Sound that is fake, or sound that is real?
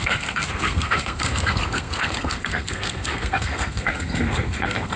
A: fake